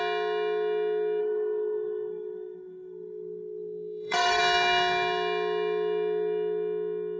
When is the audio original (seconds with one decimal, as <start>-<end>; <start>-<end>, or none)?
0.0-1.2; 4.4-7.2